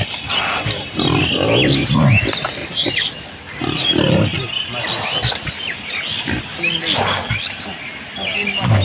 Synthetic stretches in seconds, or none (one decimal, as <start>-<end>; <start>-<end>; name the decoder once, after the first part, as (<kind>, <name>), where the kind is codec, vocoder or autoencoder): none